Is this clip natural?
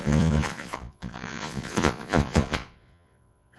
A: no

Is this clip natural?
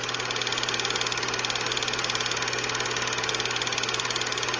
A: yes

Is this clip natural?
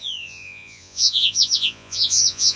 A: no